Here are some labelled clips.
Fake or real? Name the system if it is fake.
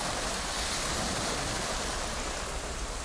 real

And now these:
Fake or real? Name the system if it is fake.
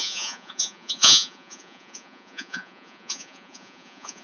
fake, vocoder, Vocos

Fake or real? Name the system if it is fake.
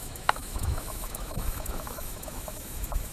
fake, autoencoder, DAC-VAE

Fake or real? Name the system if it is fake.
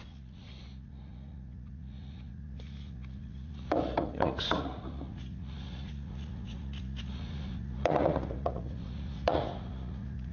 fake, vocoder, Vocos